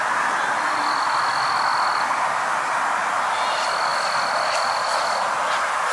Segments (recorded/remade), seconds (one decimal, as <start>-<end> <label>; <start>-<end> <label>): 0.0-5.9 recorded